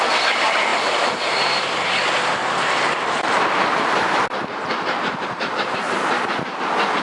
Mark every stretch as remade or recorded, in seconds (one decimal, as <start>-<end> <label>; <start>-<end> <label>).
0.0-0.7 recorded; 0.7-1.6 remade; 1.6-2.4 recorded; 2.4-6.6 remade; 6.6-7.0 recorded